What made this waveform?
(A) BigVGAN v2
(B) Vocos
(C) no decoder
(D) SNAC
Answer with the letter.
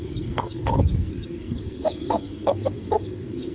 D